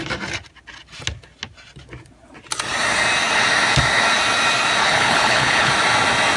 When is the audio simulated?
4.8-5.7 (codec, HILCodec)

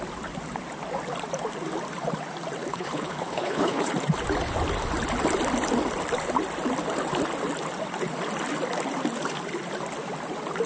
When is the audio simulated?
2.7-3.9 (codec, HILCodec)

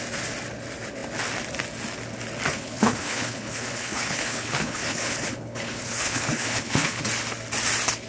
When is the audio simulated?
2.5-7.0 (codec, HILCodec)

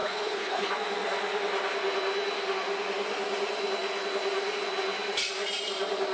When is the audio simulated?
0.0-0.7 (codec, HILCodec)

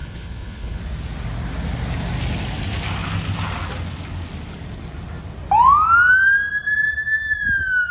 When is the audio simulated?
0.0-0.8 (codec, HILCodec)

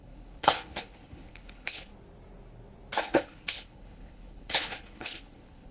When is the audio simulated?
0.0-1.9 (codec, HILCodec); 3.0-5.7